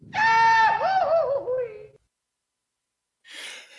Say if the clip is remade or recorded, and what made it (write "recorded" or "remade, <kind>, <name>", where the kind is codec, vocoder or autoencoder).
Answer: recorded